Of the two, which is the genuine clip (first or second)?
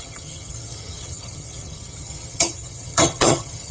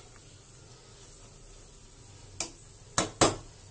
second